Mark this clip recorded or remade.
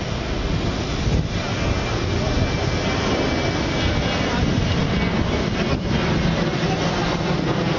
recorded